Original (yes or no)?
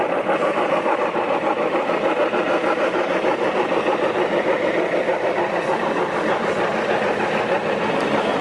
no